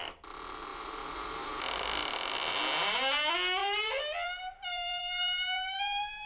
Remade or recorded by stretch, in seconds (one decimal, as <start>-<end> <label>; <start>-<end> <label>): 0.0-0.7 recorded; 0.7-1.5 remade; 1.5-2.0 recorded; 2.0-2.6 remade; 2.6-3.6 recorded; 3.6-6.3 remade